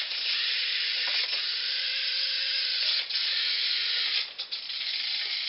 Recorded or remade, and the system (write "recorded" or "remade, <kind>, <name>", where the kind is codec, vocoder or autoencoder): recorded